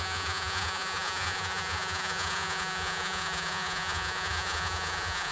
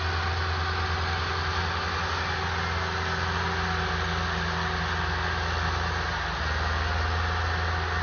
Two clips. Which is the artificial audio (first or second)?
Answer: first